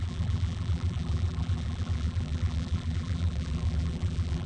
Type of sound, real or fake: fake